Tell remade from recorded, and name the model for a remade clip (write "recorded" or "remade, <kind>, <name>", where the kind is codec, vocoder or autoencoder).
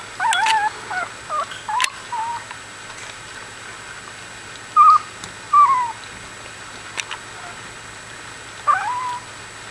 recorded